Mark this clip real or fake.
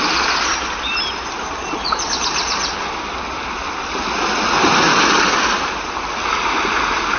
real